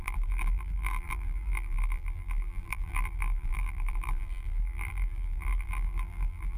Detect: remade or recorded remade